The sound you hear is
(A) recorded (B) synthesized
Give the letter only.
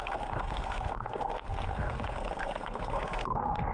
B